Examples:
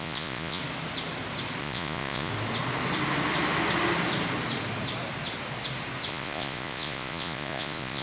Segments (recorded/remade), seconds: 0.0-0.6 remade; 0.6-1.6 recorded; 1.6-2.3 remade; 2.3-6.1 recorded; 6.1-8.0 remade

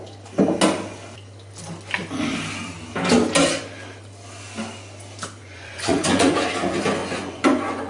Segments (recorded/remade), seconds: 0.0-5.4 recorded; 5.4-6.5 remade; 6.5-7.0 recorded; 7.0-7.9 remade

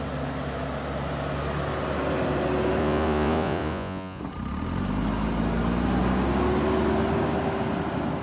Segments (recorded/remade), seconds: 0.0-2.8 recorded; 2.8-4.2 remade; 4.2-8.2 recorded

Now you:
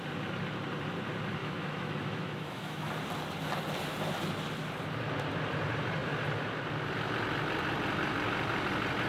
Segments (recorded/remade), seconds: 0.0-1.4 recorded; 1.4-2.9 remade; 2.9-9.1 recorded

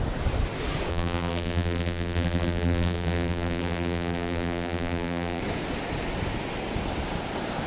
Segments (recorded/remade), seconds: 0.0-0.9 recorded; 0.9-5.4 remade; 5.4-7.7 recorded

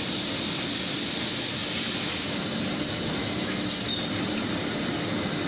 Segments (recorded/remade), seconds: 0.0-1.6 recorded; 1.6-2.4 remade; 2.4-4.3 recorded; 4.3-4.9 remade; 4.9-5.5 recorded

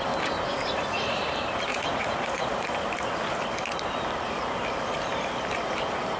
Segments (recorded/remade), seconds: 0.0-0.5 recorded; 0.5-1.2 remade; 1.2-1.7 recorded; 1.7-2.7 remade; 2.7-6.2 recorded